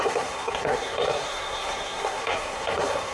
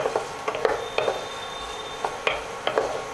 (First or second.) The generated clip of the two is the first